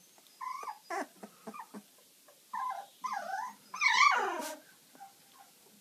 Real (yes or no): yes